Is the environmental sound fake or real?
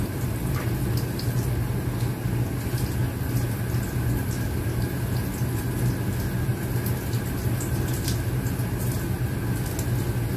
real